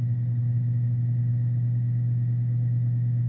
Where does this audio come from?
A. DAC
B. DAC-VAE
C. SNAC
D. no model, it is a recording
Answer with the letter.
D